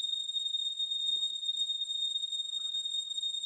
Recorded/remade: remade